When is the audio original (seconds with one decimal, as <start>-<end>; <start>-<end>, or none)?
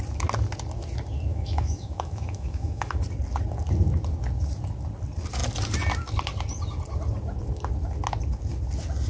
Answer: 0.0-1.3; 3.0-9.1